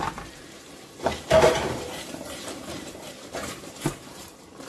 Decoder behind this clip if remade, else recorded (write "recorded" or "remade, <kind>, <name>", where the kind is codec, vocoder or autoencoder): remade, vocoder, BigVGAN v2